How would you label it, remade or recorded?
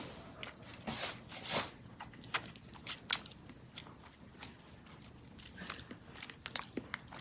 recorded